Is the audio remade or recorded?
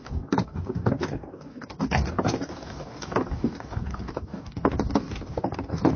remade